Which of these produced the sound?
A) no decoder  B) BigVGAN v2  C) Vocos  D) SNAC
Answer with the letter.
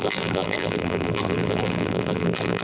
B